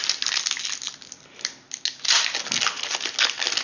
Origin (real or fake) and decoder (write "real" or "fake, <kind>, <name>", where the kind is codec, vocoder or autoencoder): real